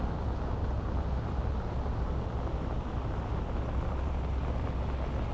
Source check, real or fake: real